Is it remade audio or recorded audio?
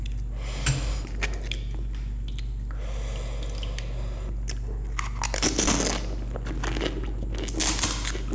recorded